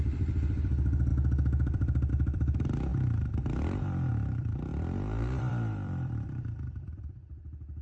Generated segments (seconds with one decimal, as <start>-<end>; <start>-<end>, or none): 0.0-7.8